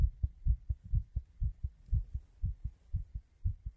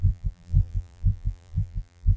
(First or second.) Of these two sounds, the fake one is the second